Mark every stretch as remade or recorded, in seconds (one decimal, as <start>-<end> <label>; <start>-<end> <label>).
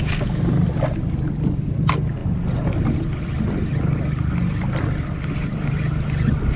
0.0-6.6 recorded